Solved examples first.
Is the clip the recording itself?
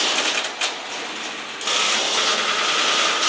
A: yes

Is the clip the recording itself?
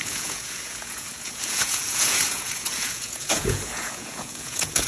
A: no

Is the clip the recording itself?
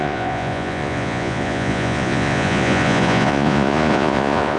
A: no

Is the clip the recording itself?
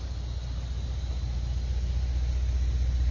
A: yes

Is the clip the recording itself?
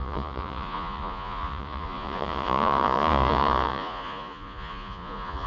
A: no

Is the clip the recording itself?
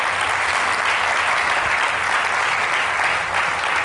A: yes